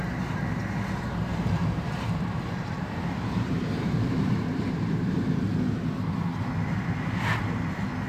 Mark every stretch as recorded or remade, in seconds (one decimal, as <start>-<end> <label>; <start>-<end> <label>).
0.0-1.3 recorded; 1.3-5.4 remade; 5.4-8.1 recorded